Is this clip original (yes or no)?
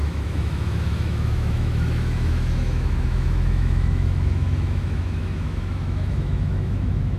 no